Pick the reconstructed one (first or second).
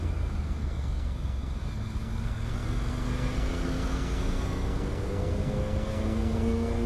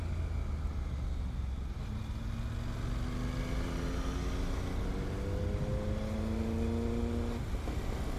first